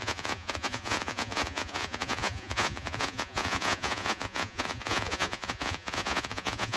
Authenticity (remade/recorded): remade